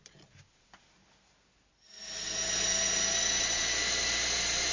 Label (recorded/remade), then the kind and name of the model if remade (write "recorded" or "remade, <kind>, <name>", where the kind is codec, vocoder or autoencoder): recorded